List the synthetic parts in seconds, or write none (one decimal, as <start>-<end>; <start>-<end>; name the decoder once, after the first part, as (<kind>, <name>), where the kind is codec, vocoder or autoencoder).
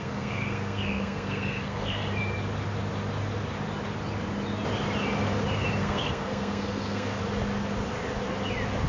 0.0-2.0 (codec, SNAC); 5.8-7.2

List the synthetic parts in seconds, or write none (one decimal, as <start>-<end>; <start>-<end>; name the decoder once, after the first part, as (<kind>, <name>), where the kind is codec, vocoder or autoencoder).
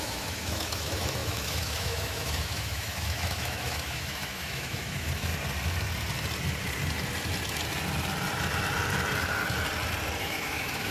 0.0-5.3 (autoencoder, DAC-VAE); 10.2-10.9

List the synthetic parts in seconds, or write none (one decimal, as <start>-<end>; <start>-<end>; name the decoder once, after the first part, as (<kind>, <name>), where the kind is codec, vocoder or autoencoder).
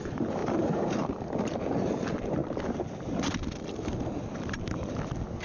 0.4-1.3 (vocoder, BigVGAN v2)